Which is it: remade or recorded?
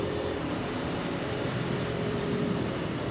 remade